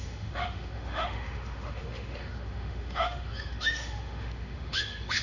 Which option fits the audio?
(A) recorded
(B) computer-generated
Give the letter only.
B